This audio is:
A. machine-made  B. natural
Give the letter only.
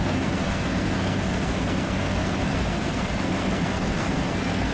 A